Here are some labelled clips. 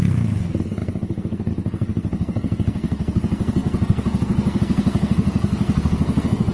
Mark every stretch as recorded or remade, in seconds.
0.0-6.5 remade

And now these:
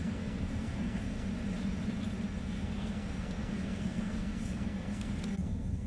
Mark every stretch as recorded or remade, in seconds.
0.0-1.3 remade; 1.3-2.4 recorded; 2.4-5.9 remade

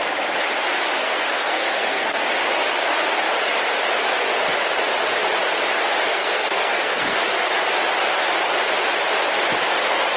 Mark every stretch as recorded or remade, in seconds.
0.0-1.0 recorded; 1.0-2.2 remade; 2.2-6.1 recorded; 6.1-7.2 remade; 7.2-10.2 recorded

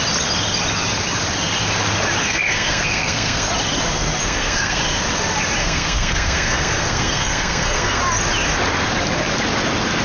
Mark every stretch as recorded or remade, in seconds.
0.0-2.2 recorded; 2.2-3.5 remade; 3.5-4.2 recorded; 4.2-4.8 remade; 4.8-5.6 recorded; 5.6-8.0 remade; 8.0-10.0 recorded